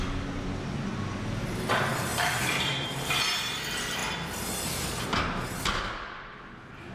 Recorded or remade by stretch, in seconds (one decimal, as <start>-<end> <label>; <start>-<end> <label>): 0.0-2.1 recorded; 2.1-3.1 remade; 3.1-6.9 recorded